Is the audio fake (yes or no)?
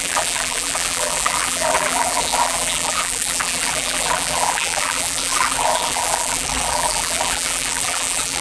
yes